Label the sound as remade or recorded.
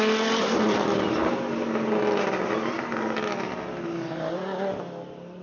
recorded